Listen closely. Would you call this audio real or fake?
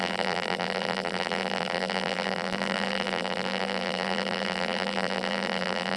fake